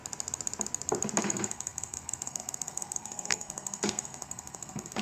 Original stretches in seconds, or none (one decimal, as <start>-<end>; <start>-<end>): 0.0-1.2